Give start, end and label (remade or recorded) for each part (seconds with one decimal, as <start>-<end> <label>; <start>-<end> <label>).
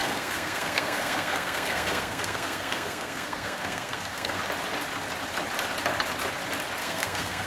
0.0-4.4 remade; 4.4-6.8 recorded; 6.8-7.5 remade